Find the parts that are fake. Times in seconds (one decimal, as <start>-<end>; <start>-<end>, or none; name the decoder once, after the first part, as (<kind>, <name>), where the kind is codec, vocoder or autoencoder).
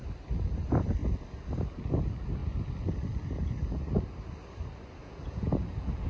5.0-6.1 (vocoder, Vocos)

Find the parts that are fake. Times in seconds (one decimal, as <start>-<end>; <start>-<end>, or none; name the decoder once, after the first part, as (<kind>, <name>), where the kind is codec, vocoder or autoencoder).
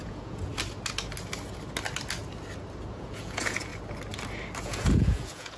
0.0-0.5 (vocoder, Vocos); 2.9-3.7; 4.6-5.6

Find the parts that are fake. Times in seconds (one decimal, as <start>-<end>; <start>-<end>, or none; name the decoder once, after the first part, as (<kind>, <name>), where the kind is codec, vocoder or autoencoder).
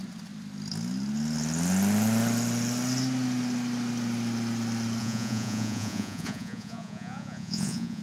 5.0-8.0 (vocoder, Vocos)